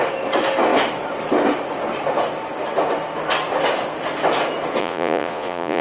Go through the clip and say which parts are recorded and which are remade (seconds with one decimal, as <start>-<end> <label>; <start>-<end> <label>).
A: 0.0-4.8 recorded; 4.8-5.8 remade